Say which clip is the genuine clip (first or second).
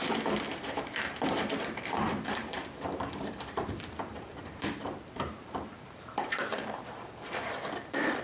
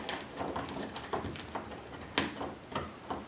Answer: second